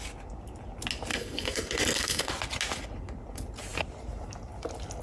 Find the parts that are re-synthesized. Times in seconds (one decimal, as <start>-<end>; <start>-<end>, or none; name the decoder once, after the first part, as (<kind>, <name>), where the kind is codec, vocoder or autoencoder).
1.1-2.3 (codec, SNAC)